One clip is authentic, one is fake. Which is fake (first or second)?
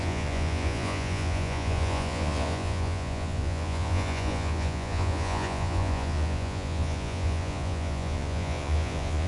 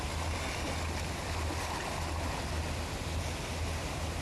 first